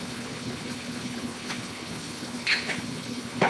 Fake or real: fake